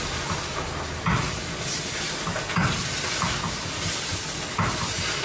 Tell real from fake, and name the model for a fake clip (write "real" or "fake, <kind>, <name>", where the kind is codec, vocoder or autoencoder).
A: real